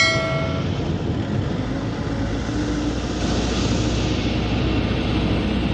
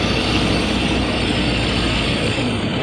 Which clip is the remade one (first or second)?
second